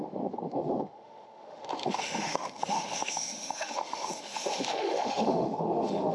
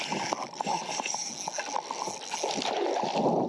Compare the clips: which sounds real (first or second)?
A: second